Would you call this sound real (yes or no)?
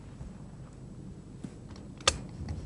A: yes